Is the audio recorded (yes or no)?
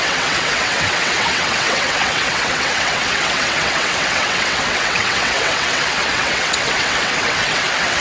no